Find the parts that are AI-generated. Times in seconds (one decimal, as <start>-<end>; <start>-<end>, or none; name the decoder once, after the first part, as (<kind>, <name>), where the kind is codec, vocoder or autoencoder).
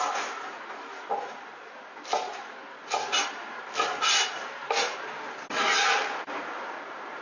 none